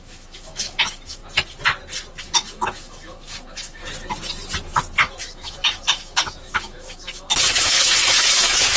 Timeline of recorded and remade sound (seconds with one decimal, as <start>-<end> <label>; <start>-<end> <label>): 0.0-1.2 remade; 1.2-2.2 recorded; 2.2-3.8 remade; 3.8-5.0 recorded; 5.0-8.8 remade

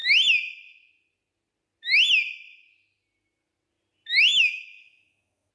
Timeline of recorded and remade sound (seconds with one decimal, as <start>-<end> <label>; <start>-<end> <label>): 0.0-4.3 recorded; 4.3-5.5 remade

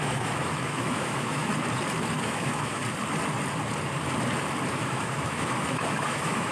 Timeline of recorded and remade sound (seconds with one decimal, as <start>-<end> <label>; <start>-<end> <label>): 0.0-1.5 remade; 1.5-2.2 recorded; 2.2-2.8 remade; 2.8-4.7 recorded; 4.7-6.5 remade

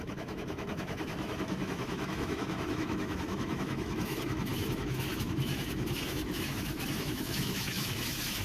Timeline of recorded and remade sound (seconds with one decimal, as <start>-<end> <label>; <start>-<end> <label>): 0.0-8.4 remade

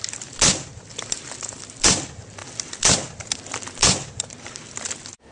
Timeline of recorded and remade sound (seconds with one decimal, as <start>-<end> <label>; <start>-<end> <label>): 0.0-5.3 recorded

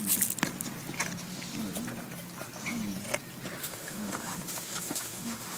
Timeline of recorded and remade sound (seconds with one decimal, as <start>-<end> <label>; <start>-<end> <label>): 0.0-3.6 recorded; 3.6-5.6 remade

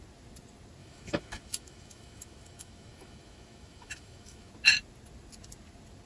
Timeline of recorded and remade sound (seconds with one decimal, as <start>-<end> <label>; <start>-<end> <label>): 0.0-0.8 recorded; 0.8-4.5 remade; 4.5-6.1 recorded